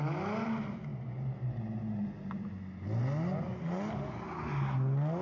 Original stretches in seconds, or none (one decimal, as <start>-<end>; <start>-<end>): 0.0-5.2